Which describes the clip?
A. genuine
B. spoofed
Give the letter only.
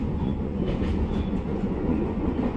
B